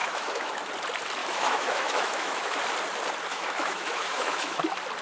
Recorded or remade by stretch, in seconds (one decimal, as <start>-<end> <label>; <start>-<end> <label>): 0.0-0.7 remade; 0.7-1.2 recorded; 1.2-2.6 remade; 2.6-3.3 recorded; 3.3-4.6 remade; 4.6-5.0 recorded